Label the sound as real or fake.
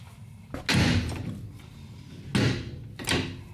real